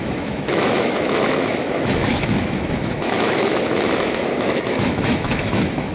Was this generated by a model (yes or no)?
yes